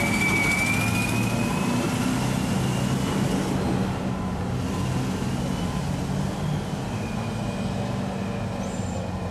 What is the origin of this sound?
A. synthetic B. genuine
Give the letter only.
B